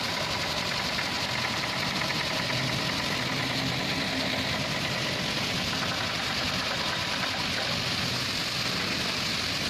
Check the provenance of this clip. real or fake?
real